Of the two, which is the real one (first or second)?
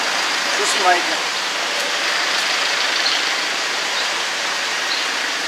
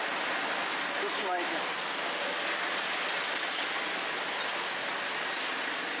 second